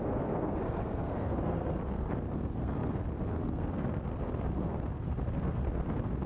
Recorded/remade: remade